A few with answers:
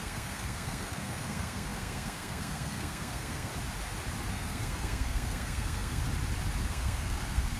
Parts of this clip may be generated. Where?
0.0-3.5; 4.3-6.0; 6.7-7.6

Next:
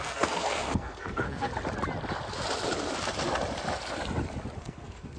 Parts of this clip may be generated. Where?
0.0-1.5; 4.6-5.2

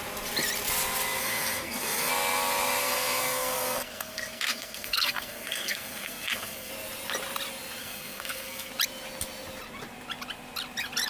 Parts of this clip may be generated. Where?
1.2-2.1; 2.8-6.7; 7.8-8.7

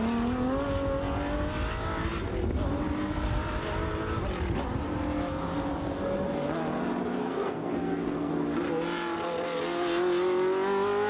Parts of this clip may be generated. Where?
7.2-8.3

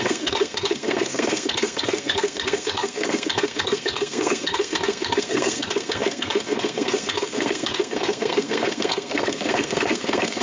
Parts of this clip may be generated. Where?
0.0-10.4

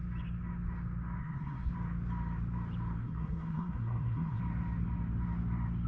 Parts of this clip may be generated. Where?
1.2-1.7; 3.0-4.4

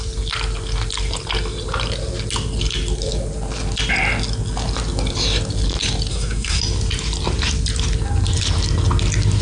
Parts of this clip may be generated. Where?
6.1-6.6